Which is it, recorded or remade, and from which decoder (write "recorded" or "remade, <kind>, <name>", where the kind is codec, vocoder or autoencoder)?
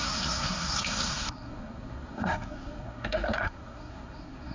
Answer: remade, codec, SNAC